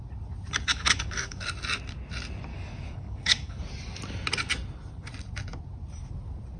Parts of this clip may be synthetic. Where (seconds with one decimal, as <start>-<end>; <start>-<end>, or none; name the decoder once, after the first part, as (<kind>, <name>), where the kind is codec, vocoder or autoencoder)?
0.7-1.5 (codec, DAC); 2.5-3.6